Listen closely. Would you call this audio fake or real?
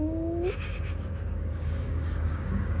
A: fake